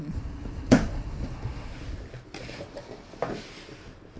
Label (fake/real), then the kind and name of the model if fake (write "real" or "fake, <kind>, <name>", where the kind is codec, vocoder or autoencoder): real